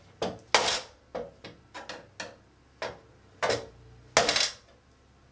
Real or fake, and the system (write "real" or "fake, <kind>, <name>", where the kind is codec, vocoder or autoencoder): real